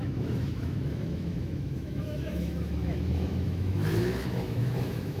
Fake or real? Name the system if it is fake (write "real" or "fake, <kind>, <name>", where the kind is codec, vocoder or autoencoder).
fake, autoencoder, DAC-VAE